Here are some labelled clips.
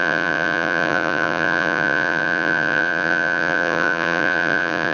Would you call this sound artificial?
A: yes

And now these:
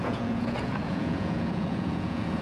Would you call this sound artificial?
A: yes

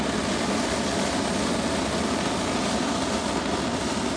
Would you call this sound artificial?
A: no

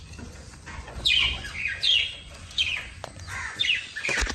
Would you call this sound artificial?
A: yes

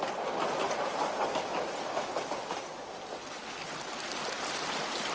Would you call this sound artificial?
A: no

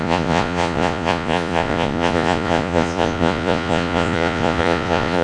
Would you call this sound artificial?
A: yes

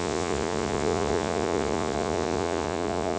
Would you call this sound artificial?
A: yes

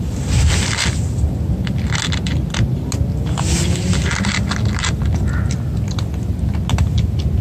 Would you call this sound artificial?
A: no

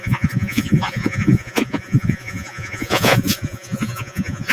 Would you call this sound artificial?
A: yes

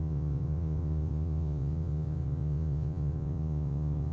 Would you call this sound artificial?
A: yes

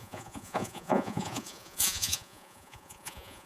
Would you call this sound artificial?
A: yes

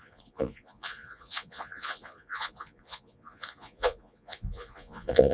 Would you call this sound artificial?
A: yes